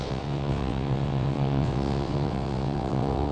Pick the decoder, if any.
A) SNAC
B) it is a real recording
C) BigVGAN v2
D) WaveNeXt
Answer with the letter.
D